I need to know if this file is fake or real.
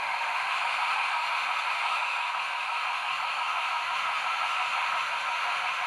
fake